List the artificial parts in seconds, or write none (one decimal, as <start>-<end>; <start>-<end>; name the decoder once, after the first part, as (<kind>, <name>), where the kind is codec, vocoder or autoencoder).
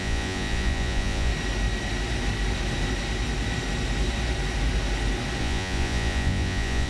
0.0-1.3 (vocoder, Vocos); 5.4-6.9